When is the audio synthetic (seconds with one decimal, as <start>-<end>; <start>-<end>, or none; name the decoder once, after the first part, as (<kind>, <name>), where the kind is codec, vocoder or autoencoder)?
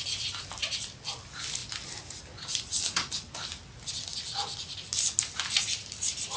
none